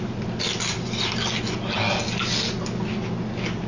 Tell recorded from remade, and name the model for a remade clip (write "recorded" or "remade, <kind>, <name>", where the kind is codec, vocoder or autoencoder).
recorded